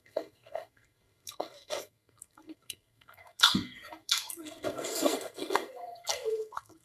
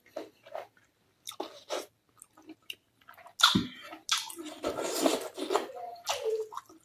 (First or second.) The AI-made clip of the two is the first